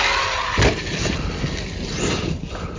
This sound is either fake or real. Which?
real